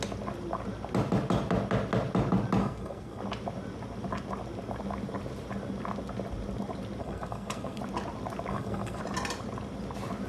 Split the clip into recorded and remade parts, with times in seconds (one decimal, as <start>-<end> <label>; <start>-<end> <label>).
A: 0.0-2.6 recorded; 2.6-3.2 remade; 3.2-7.0 recorded; 7.0-7.8 remade; 7.8-8.5 recorded; 8.5-9.0 remade; 9.0-10.3 recorded